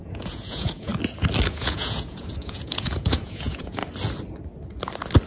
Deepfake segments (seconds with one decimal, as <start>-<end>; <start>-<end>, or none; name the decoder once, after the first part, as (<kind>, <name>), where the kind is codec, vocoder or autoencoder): 0.0-0.9 (vocoder, Vocos); 1.5-3.8